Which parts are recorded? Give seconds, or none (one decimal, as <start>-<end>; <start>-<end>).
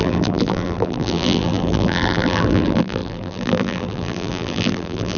none